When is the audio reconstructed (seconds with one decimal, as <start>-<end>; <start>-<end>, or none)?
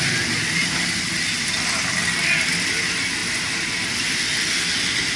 none